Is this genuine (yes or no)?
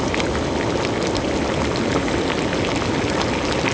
yes